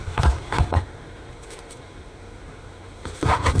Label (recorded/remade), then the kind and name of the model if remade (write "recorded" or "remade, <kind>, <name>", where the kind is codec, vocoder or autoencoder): remade, codec, SNAC